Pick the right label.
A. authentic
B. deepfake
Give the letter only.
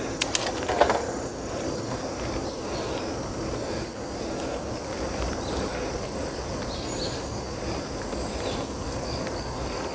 A